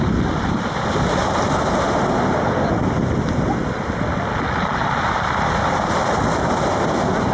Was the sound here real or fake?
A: real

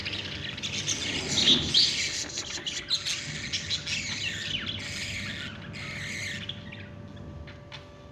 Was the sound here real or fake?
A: real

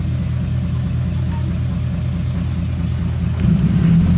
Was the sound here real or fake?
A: real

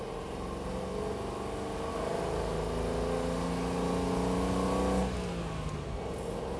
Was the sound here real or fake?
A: real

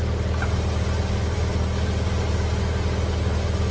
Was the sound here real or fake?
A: real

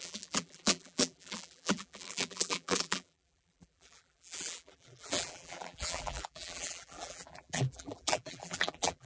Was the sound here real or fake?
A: fake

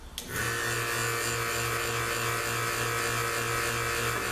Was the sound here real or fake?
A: real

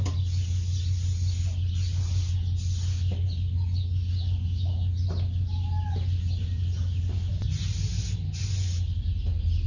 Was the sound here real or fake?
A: real